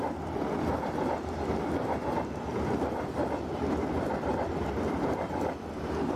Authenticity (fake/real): fake